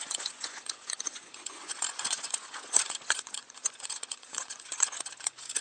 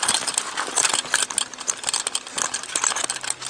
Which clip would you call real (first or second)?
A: second